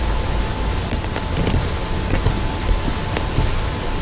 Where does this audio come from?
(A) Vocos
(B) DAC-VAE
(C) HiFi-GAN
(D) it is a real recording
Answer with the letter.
D